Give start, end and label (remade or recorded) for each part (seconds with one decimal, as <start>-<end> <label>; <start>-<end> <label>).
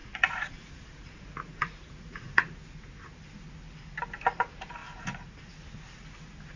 0.0-2.4 remade; 2.4-4.8 recorded; 4.8-5.5 remade; 5.5-6.6 recorded